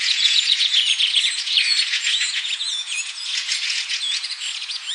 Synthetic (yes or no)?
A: yes